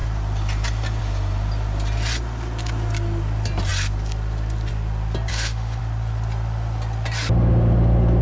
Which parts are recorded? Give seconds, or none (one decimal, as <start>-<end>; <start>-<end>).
0.0-5.3; 5.8-8.2